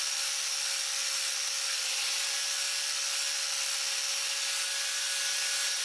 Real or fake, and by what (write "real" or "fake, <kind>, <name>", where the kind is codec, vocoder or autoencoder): real